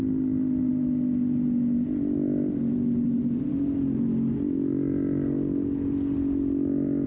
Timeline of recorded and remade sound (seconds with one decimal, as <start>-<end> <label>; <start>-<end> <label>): 0.0-7.1 recorded